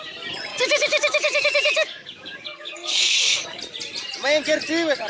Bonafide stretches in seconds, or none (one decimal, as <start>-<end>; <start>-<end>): 0.0-0.5; 3.6-5.1